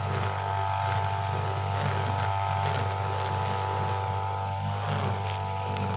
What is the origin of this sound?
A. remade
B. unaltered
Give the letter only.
B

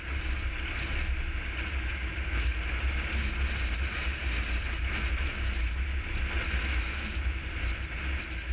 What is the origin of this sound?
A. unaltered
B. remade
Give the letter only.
A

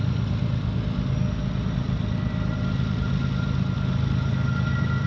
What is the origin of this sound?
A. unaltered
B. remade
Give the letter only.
A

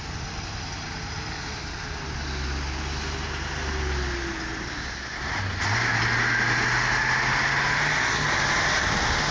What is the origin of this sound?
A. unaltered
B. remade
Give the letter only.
A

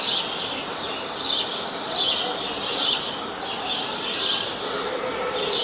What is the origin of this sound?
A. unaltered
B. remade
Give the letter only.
A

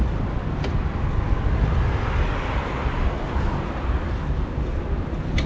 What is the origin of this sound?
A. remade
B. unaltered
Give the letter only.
B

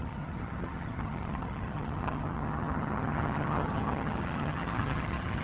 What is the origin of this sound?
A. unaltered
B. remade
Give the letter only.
B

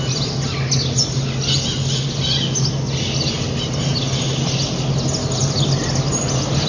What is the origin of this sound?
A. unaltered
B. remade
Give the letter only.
A